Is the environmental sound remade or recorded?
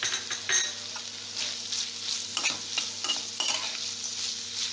recorded